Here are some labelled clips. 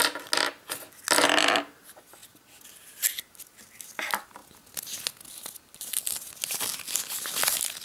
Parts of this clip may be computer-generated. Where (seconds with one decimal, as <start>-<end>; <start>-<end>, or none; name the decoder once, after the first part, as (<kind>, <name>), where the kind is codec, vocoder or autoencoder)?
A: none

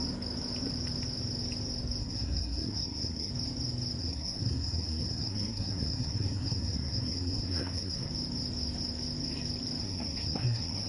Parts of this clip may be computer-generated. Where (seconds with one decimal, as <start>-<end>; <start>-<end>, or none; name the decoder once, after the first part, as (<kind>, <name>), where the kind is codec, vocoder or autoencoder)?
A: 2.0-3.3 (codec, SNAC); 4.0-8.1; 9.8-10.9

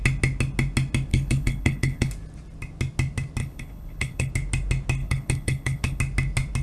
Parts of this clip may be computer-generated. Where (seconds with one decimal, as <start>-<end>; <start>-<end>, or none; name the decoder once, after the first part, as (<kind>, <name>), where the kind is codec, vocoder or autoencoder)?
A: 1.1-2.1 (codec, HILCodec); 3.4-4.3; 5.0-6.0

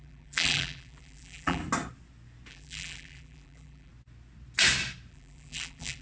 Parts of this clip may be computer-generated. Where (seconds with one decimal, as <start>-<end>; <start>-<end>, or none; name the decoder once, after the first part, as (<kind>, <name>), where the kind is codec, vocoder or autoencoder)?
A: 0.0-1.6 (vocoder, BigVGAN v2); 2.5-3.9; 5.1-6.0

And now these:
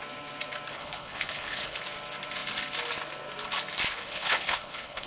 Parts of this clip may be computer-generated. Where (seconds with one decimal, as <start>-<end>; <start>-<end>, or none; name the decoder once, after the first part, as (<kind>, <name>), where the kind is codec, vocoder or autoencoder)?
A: 0.7-1.8 (codec, HILCodec); 3.9-5.1